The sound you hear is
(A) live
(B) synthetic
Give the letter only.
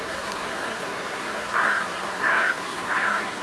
B